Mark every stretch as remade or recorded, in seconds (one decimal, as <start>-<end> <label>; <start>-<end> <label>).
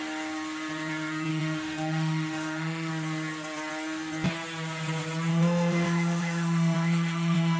0.0-1.3 recorded; 1.3-2.9 remade; 2.9-5.3 recorded; 5.3-7.6 remade